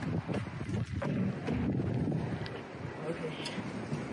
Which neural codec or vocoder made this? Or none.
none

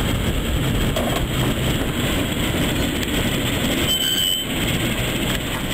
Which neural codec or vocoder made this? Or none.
none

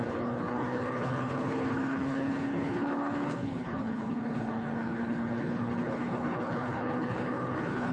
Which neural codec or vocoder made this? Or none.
codec, HILCodec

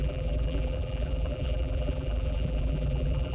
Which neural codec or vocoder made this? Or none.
vocoder, BigVGAN v2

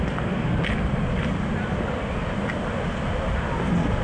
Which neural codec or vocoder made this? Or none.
none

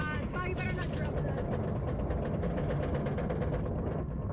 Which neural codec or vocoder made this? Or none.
none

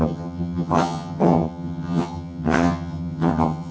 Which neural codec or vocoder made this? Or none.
vocoder, HiFi-GAN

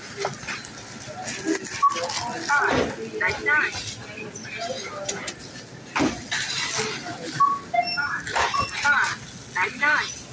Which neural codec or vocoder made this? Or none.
none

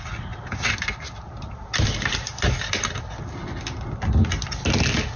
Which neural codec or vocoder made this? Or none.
none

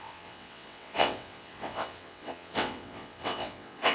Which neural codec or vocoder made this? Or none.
vocoder, WaveNeXt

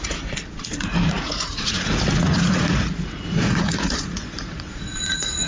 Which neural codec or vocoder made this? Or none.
vocoder, Vocos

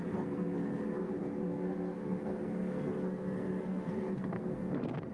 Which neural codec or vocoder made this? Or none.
codec, SNAC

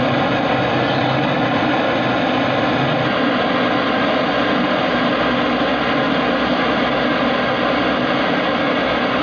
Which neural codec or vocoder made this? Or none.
none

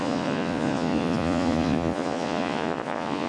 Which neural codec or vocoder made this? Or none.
vocoder, Vocos